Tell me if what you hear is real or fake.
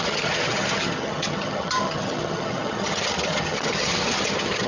fake